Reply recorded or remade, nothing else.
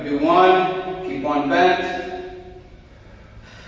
recorded